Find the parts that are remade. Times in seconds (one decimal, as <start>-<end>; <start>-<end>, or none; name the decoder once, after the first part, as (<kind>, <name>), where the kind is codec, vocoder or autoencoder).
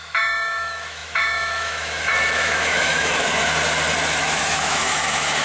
0.0-3.4 (autoencoder, DAC-VAE); 4.2-5.4